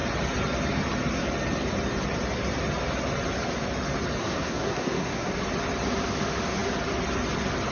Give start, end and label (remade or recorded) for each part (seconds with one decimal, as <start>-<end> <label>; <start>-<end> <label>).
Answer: 0.0-4.2 recorded; 4.2-5.4 remade; 5.4-7.7 recorded

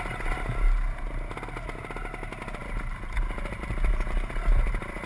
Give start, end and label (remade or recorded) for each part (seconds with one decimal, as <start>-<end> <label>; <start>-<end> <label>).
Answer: 0.0-5.1 recorded

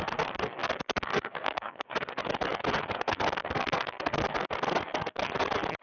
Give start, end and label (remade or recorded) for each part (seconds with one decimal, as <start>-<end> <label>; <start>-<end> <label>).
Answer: 0.0-2.2 remade; 2.2-2.9 recorded; 2.9-5.2 remade; 5.2-5.8 recorded

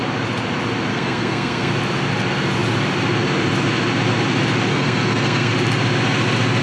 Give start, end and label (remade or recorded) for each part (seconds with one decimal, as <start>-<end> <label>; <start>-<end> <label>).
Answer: 0.0-0.9 recorded; 0.9-1.7 remade; 1.7-4.7 recorded; 4.7-5.5 remade; 5.5-6.6 recorded

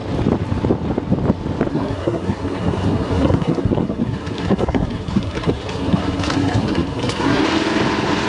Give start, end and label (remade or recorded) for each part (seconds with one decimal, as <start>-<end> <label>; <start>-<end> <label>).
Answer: 0.0-1.7 recorded; 1.7-7.4 remade; 7.4-8.3 recorded

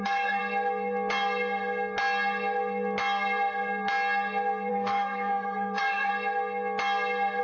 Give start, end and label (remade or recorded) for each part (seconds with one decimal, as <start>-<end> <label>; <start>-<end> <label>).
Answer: 0.0-0.4 remade; 0.4-4.7 recorded; 4.7-6.1 remade; 6.1-7.4 recorded

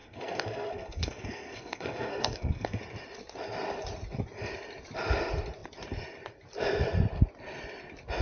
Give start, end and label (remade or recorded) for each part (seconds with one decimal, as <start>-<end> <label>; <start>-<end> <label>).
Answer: 0.0-2.8 remade; 2.8-8.2 recorded